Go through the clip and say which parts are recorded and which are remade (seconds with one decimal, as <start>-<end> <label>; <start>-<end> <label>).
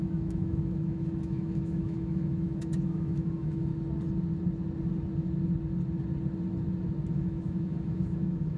0.0-3.7 remade; 3.7-7.1 recorded; 7.1-8.6 remade